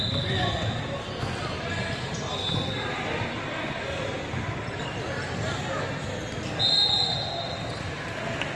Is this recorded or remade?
recorded